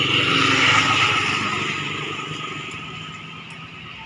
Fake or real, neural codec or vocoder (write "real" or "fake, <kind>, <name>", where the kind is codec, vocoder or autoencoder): real